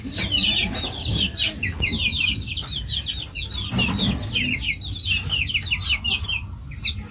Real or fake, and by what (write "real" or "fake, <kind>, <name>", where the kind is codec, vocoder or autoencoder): real